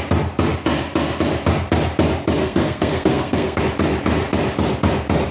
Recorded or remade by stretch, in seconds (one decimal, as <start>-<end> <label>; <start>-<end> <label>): 0.0-2.4 recorded; 2.4-3.6 remade; 3.6-5.3 recorded